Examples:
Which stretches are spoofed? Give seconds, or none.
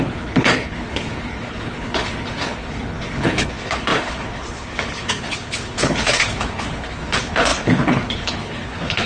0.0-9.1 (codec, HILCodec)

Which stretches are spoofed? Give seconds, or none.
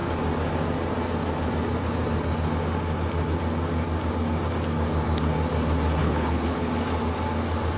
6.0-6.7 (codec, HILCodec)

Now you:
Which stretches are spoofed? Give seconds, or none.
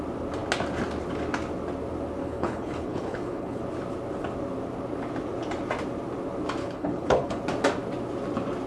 2.2-3.6 (codec, HILCodec); 6.6-7.4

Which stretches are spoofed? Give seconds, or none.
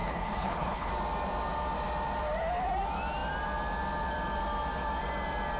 0.0-0.9 (codec, HILCodec)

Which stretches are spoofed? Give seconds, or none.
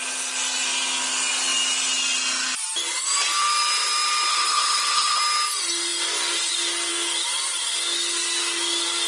4.3-5.2 (codec, HILCodec)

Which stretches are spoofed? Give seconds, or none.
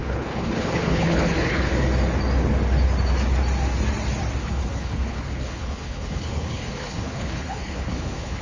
0.0-1.7 (codec, HILCodec); 4.4-8.4